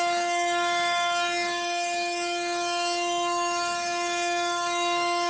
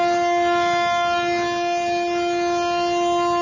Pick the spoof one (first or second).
first